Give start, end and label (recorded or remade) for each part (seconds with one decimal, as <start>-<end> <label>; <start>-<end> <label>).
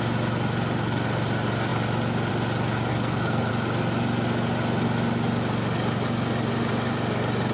0.0-2.9 recorded; 2.9-3.5 remade; 3.5-7.5 recorded